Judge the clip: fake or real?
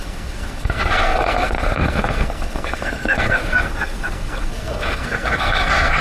fake